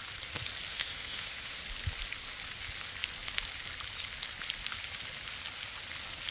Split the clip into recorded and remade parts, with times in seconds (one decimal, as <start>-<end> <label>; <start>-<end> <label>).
0.0-0.7 recorded; 0.7-1.6 remade; 1.6-6.3 recorded